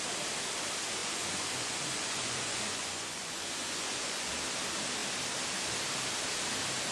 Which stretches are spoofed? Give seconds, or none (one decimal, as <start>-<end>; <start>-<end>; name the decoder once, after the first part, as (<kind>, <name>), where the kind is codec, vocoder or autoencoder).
1.0-4.3 (vocoder, Vocos)